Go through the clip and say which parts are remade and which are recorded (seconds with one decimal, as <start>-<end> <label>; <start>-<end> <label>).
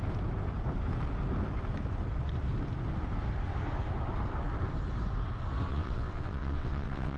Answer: 0.0-5.7 recorded; 5.7-7.2 remade